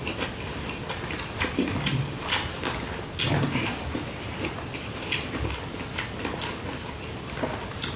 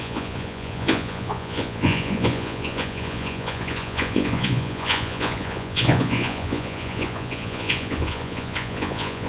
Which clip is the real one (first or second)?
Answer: first